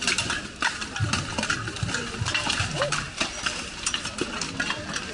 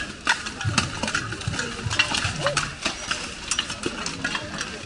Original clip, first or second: second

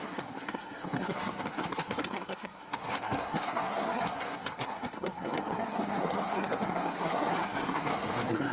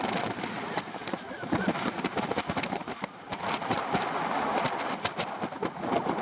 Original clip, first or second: second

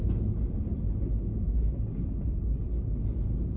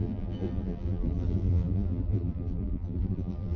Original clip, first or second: first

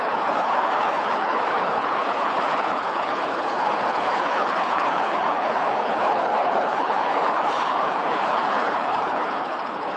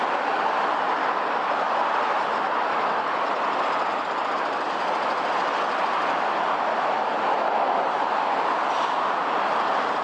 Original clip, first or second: second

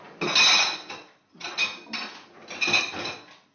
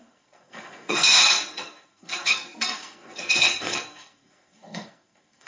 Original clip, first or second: first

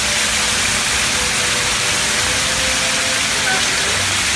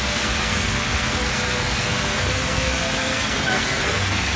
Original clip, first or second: first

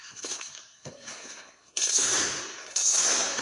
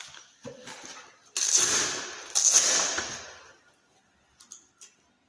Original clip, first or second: second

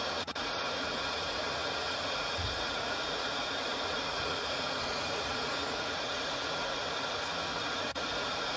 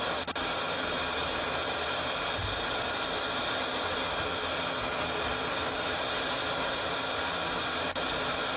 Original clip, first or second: second